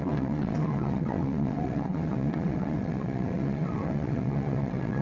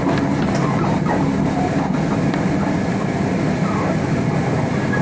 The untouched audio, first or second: second